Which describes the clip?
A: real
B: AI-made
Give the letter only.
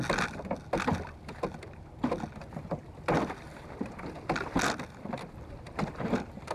A